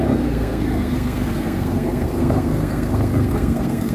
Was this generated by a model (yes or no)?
yes